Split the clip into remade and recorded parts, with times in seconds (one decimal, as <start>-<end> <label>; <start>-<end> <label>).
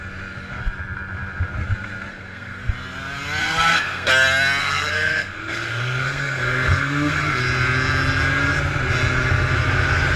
0.0-2.1 recorded; 2.1-2.7 remade; 2.7-3.4 recorded; 3.4-4.1 remade; 4.1-4.6 recorded; 4.6-7.4 remade; 7.4-10.2 recorded